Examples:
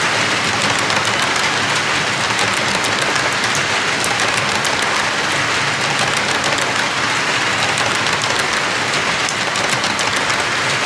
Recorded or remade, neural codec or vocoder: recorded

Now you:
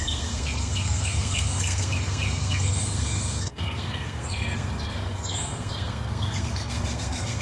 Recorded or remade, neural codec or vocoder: remade, codec, SNAC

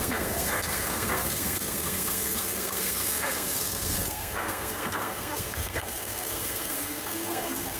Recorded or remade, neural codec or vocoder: remade, codec, SNAC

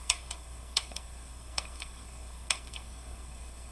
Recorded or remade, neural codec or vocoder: remade, codec, SNAC